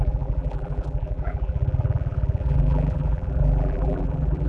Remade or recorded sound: remade